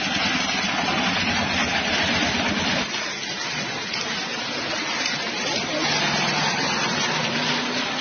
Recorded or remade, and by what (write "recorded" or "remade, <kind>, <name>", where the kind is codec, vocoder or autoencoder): recorded